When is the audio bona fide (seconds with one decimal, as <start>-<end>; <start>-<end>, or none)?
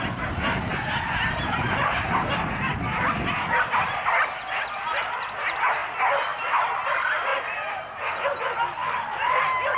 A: 0.0-9.8